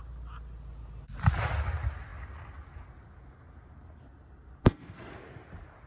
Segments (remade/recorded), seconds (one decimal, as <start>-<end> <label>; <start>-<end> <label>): 0.0-4.6 recorded; 4.6-5.1 remade; 5.1-5.9 recorded